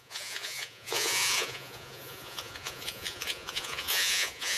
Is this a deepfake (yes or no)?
yes